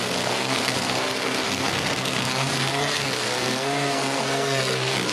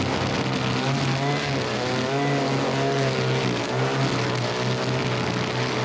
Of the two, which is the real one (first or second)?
second